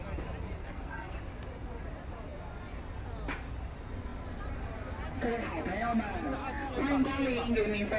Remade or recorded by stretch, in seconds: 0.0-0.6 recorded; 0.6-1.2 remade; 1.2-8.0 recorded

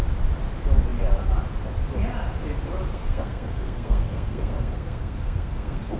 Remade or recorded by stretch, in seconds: 0.0-2.9 recorded; 2.9-6.0 remade

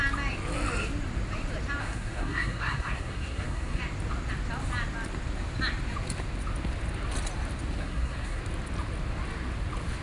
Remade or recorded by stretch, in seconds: 0.0-1.8 recorded; 1.8-3.8 remade; 3.8-7.8 recorded; 7.8-8.4 remade; 8.4-10.0 recorded

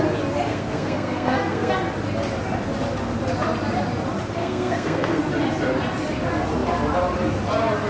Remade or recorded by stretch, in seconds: 0.0-0.5 recorded; 0.5-1.7 remade; 1.7-4.4 recorded; 4.4-5.2 remade; 5.2-7.9 recorded

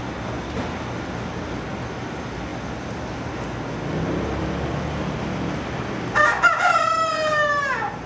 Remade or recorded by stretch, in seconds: 0.0-8.1 recorded

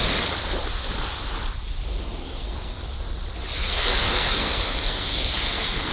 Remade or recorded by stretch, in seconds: 0.0-2.2 recorded; 2.2-2.8 remade; 2.8-3.6 recorded; 3.6-5.9 remade

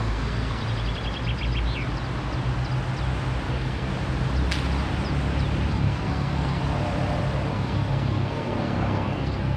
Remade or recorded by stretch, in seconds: 0.0-0.6 remade; 0.6-3.5 recorded; 3.5-3.9 remade; 3.9-5.7 recorded; 5.7-6.6 remade; 6.6-7.5 recorded; 7.5-9.6 remade